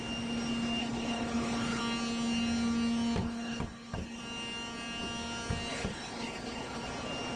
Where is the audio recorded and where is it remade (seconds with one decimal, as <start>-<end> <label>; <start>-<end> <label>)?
0.0-0.8 recorded; 0.8-1.8 remade; 1.8-3.2 recorded; 3.2-4.2 remade; 4.2-5.7 recorded; 5.7-6.9 remade; 6.9-7.4 recorded